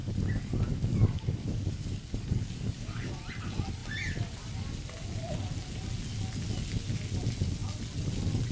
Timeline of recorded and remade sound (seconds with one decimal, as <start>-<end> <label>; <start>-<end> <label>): 0.0-3.1 remade; 3.1-8.5 recorded